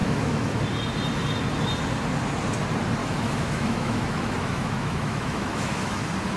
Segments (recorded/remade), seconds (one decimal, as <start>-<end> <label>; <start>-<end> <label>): 0.0-0.6 remade; 0.6-3.0 recorded; 3.0-6.0 remade; 6.0-6.4 recorded